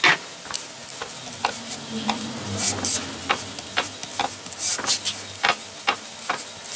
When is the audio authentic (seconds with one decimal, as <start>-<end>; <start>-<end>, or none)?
0.0-6.8